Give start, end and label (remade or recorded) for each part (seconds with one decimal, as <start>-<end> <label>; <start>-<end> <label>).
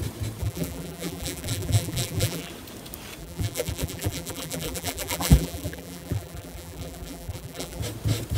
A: 0.0-0.4 recorded; 0.4-2.5 remade; 2.5-3.2 recorded; 3.2-7.8 remade; 7.8-8.4 recorded